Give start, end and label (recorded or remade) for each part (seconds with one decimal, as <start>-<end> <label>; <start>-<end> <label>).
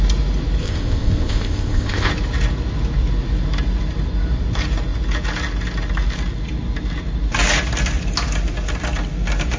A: 0.0-0.6 recorded; 0.6-2.1 remade; 2.1-9.6 recorded